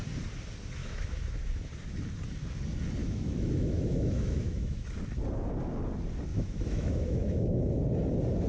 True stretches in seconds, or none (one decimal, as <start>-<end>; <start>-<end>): 0.0-0.8; 1.5-3.0; 4.9-6.3; 7.7-8.5